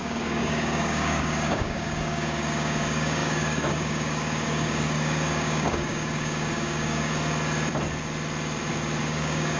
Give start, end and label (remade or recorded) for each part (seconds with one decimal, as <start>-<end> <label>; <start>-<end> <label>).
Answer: 0.0-7.1 remade; 7.1-9.0 recorded; 9.0-9.6 remade